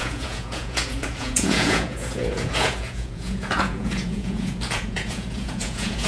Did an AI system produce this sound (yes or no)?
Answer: yes